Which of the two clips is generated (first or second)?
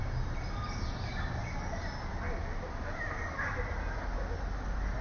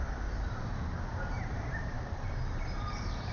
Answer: second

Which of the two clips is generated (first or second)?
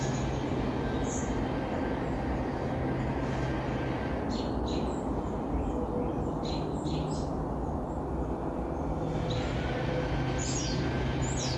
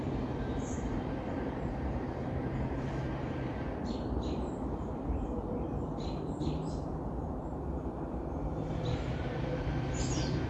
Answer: second